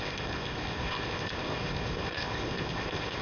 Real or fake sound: fake